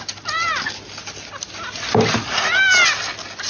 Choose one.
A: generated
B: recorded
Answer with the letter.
B